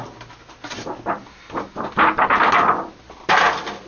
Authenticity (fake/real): real